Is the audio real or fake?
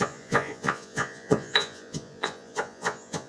fake